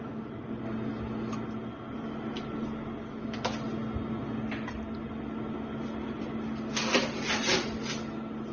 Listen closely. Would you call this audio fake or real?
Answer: real